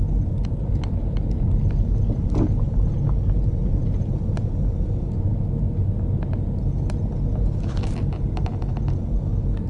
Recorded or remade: recorded